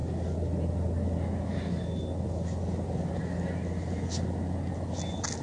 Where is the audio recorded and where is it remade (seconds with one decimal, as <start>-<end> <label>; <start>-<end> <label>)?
0.0-5.4 recorded